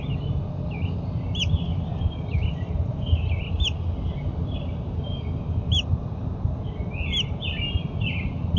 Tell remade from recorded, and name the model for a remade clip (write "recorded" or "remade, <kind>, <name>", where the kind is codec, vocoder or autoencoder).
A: recorded